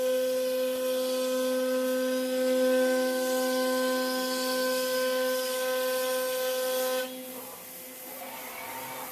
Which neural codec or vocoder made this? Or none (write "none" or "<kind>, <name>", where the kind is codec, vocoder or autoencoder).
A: none